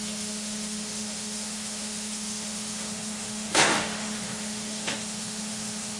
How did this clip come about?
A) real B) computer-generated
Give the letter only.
B